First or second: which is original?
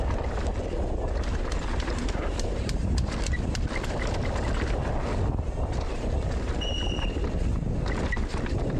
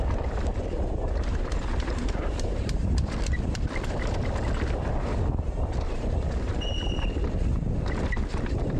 first